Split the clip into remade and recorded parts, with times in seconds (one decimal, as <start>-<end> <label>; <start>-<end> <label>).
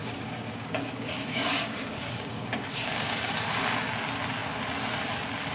0.0-3.3 remade; 3.3-5.5 recorded